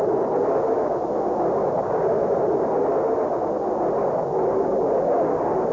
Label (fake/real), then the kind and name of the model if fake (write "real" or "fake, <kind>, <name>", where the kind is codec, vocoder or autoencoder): real